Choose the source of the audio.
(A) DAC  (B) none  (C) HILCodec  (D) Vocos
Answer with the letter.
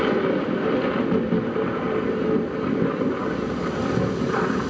B